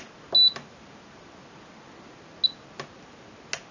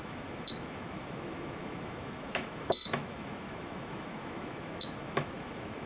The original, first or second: first